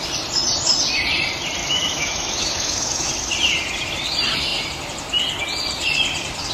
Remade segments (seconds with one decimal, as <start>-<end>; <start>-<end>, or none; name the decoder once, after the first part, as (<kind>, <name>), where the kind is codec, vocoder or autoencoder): 1.6-3.1 (autoencoder, DAC-VAE)